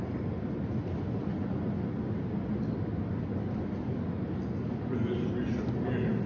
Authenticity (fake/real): real